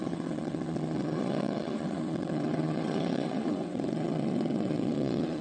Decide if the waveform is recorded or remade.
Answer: remade